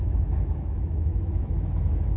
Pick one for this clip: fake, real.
fake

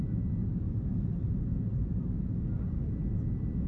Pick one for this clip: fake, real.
real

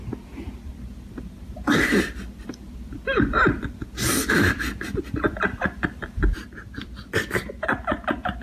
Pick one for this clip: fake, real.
fake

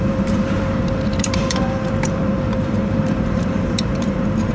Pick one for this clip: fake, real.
fake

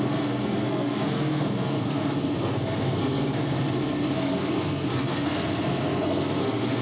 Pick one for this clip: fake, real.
fake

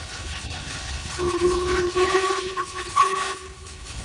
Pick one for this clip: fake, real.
fake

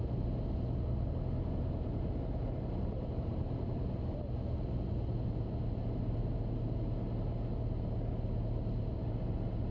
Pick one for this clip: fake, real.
real